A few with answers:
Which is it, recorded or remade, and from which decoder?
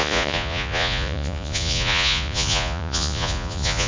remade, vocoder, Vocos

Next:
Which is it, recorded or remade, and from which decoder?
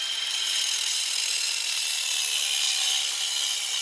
recorded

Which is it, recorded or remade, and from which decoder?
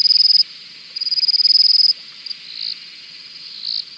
recorded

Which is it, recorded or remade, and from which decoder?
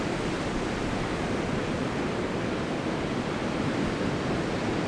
recorded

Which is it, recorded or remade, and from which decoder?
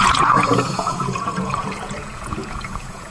remade, vocoder, Vocos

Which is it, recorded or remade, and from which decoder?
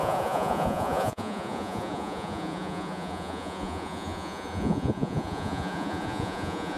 remade, vocoder, Vocos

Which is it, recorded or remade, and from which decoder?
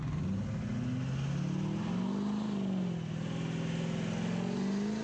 recorded